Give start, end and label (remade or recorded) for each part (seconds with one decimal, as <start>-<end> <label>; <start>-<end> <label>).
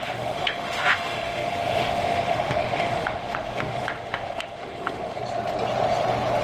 0.0-5.2 remade; 5.2-6.4 recorded